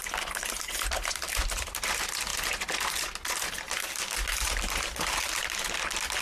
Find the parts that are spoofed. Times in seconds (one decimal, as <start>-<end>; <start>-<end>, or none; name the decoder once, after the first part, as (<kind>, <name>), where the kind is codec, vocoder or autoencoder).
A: none

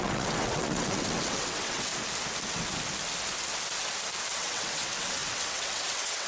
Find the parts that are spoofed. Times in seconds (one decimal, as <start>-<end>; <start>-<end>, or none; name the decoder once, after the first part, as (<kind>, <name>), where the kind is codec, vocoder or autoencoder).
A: 0.0-1.9 (vocoder, WaveNeXt); 4.3-6.3